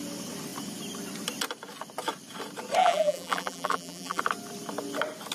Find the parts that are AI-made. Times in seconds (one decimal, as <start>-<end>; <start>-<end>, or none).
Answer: 2.8-4.2